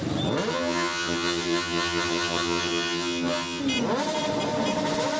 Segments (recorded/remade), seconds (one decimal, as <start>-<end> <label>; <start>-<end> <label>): 0.0-0.5 recorded; 0.5-3.6 remade; 3.6-5.2 recorded